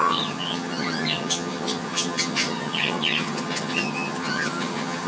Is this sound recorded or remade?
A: remade